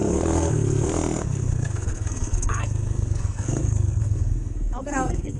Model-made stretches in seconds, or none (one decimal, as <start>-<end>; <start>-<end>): 0.0-5.4